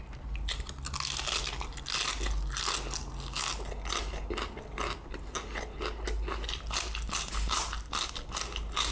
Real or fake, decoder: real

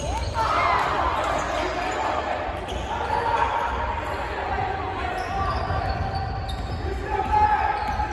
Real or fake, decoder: real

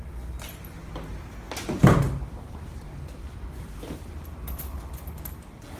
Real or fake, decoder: real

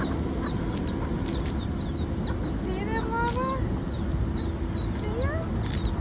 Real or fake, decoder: real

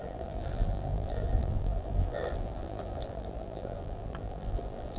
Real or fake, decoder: fake, vocoder, BigVGAN v2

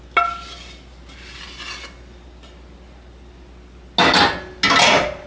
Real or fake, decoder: real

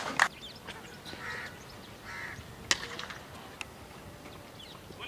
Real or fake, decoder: real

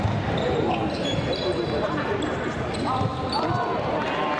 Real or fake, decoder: real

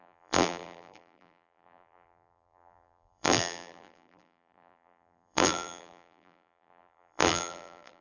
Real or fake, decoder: fake, vocoder, BigVGAN v2